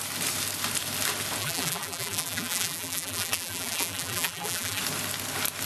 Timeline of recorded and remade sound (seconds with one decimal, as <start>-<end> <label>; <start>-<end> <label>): 0.0-1.4 recorded; 1.4-4.8 remade; 4.8-5.7 recorded